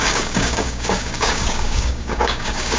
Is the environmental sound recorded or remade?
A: remade